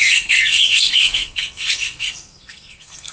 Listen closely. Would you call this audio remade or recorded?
remade